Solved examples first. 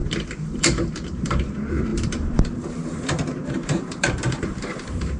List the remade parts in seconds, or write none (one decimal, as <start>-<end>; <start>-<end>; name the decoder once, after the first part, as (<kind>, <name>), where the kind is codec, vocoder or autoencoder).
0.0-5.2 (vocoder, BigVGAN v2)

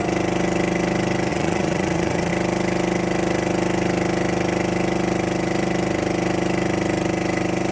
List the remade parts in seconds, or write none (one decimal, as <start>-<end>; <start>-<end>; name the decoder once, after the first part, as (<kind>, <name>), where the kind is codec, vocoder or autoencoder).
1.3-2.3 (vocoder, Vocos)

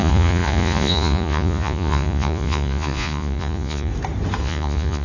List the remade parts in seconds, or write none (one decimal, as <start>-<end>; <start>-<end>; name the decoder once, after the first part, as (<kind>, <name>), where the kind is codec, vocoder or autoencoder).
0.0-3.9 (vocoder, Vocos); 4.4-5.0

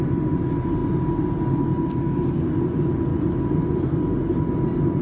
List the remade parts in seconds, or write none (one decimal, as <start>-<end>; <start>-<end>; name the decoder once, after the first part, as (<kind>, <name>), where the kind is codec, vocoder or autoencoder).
none

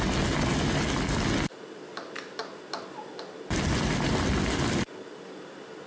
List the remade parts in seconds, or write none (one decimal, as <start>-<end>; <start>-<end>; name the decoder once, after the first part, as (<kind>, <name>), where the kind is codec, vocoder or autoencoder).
none

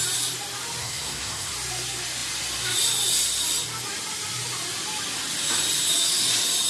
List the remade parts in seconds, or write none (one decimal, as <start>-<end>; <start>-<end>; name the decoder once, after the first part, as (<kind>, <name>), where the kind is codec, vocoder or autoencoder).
0.8-1.5 (codec, SNAC)

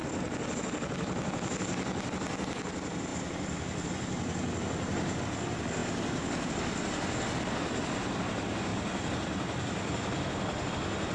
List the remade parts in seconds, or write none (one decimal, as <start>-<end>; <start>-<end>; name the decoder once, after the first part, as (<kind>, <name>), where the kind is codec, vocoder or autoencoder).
5.8-6.5 (vocoder, BigVGAN v2); 8.7-10.7